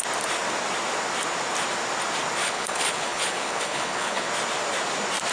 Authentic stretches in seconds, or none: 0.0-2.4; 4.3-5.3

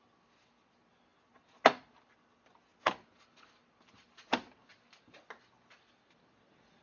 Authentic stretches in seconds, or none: 0.0-6.8

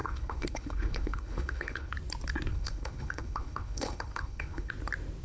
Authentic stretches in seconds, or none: 1.9-2.5; 4.7-5.2

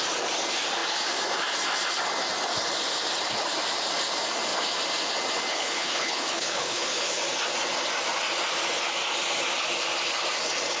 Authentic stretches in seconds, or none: 0.0-5.5; 7.1-10.8

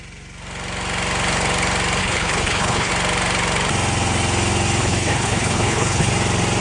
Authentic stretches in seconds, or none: 0.0-2.0; 2.9-4.8; 6.1-6.6

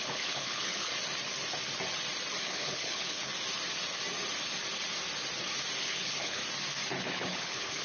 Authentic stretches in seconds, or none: 0.9-2.4; 3.3-5.8; 6.4-7.0

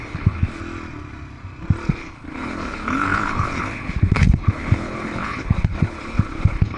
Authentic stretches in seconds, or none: 0.6-1.9

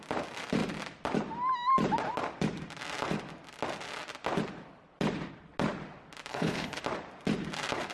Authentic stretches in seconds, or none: 0.0-6.3; 6.8-7.9